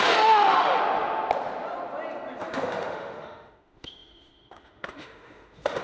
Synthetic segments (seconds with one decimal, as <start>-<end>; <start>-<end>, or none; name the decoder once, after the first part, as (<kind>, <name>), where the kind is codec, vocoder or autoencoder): 0.0-0.8 (autoencoder, DAC-VAE); 2.4-5.8